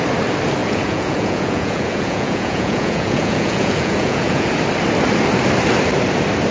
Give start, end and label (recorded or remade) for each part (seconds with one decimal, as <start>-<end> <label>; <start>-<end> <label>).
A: 0.0-0.6 recorded; 0.6-4.5 remade; 4.5-6.5 recorded